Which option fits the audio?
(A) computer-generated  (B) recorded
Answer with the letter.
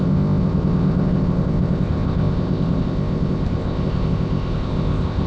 A